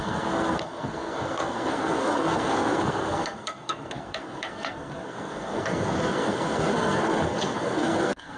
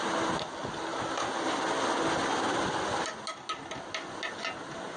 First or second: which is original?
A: second